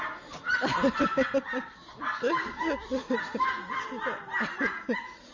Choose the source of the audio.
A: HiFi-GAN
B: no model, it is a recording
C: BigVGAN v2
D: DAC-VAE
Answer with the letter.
B